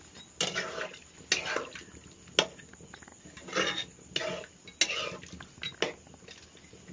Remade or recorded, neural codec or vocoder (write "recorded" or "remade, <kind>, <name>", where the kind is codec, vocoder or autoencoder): recorded